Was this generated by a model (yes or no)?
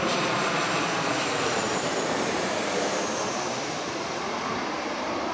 yes